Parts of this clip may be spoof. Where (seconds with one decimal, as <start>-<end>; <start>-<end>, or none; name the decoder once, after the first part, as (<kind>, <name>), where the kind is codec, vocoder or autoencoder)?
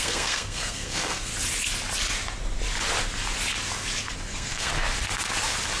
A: 0.0-1.3 (codec, SNAC); 4.3-4.7